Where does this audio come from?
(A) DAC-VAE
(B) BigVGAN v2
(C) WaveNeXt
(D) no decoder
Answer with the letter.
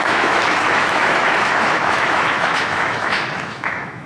A